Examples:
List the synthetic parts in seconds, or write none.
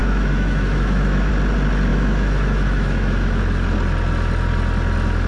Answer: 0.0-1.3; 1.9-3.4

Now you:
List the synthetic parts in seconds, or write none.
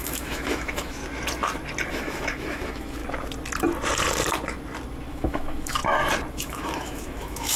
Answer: 0.0-1.0; 1.9-3.0; 5.1-5.8; 6.3-7.6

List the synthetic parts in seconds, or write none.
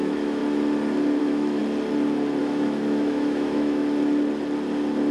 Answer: 0.0-0.4; 1.2-1.6; 2.4-3.8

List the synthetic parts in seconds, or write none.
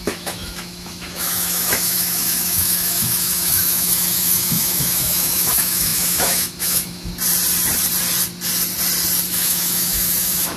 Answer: 0.0-7.1; 9.3-10.6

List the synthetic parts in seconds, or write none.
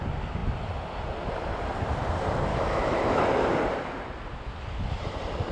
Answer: 2.5-3.2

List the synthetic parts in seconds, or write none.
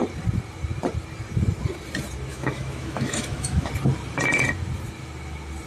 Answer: 2.3-3.7